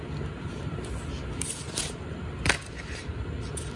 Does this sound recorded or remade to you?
recorded